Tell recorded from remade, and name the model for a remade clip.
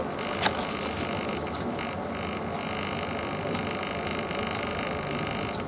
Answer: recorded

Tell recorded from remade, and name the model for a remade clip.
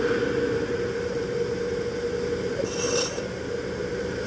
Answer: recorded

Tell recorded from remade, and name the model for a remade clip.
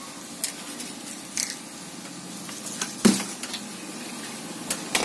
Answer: recorded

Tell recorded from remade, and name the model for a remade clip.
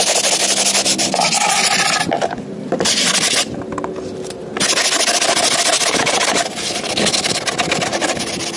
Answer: recorded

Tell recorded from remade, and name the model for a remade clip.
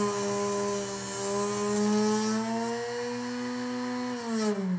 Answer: recorded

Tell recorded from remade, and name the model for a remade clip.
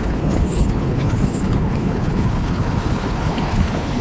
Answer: remade, codec, HILCodec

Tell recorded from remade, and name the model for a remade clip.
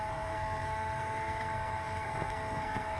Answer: remade, codec, SNAC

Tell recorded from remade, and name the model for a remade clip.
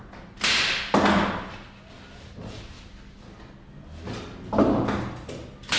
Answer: recorded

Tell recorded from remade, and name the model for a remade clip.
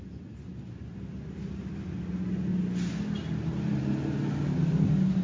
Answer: recorded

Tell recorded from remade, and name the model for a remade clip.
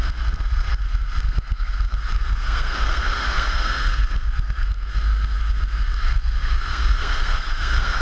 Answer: remade, codec, SNAC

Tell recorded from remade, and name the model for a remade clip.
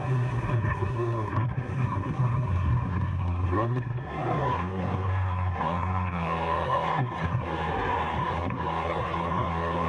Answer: remade, codec, SNAC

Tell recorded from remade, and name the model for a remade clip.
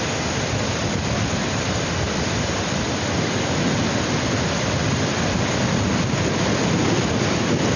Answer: recorded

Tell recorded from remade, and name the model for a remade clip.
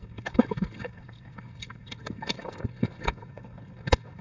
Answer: remade, codec, SNAC